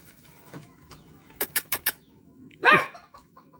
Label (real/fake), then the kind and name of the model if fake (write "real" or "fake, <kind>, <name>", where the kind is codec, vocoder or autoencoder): fake, autoencoder, DAC-VAE